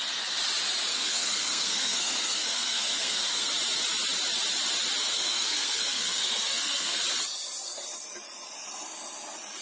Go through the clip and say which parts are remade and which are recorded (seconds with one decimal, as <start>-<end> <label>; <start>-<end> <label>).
0.0-0.9 recorded; 0.9-3.5 remade; 3.5-5.1 recorded; 5.1-7.0 remade; 7.0-9.6 recorded